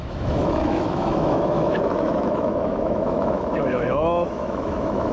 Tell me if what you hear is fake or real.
fake